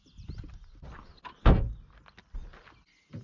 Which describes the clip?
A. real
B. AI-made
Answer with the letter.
A